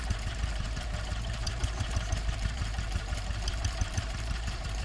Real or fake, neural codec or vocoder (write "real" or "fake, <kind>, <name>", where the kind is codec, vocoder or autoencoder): fake, vocoder, BigVGAN v2